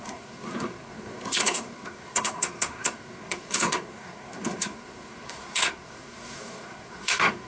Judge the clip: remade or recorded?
remade